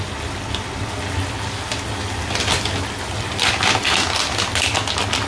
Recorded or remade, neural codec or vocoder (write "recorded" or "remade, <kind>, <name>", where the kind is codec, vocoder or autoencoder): recorded